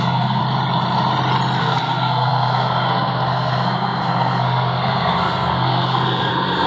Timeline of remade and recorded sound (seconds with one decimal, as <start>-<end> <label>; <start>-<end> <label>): 0.0-0.4 remade; 0.4-1.6 recorded; 1.6-6.7 remade